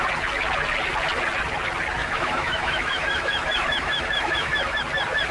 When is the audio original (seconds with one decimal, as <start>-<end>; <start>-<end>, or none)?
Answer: 0.0-2.0; 4.8-5.3